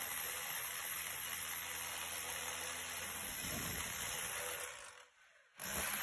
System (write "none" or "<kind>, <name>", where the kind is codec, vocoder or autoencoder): none